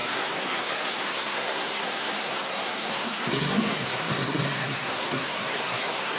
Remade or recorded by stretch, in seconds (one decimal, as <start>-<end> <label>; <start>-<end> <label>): 0.0-6.2 remade